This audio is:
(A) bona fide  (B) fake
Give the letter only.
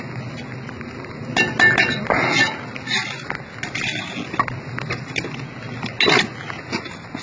A